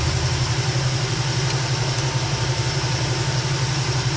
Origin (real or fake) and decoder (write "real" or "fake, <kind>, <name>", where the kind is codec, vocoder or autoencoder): fake, vocoder, BigVGAN v2